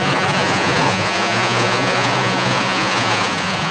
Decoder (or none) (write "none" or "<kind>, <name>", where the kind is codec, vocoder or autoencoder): vocoder, Vocos